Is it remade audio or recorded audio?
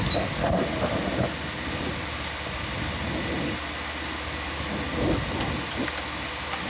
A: recorded